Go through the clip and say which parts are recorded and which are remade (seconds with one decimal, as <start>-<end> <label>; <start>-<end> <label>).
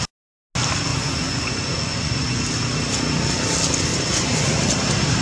0.0-0.9 recorded; 0.9-2.4 remade; 2.4-3.9 recorded; 3.9-4.6 remade; 4.6-5.2 recorded